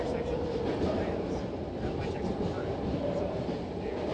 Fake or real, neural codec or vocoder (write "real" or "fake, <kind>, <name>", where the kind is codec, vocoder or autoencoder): real